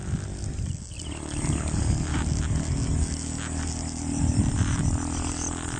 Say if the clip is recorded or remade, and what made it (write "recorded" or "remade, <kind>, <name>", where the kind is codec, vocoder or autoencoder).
recorded